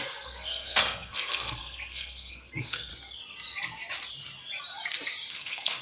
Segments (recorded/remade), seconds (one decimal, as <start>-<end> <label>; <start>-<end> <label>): 0.0-2.9 remade; 2.9-5.3 recorded; 5.3-5.8 remade